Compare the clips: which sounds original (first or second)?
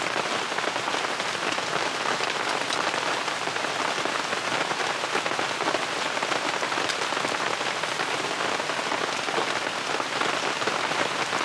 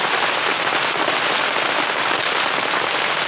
first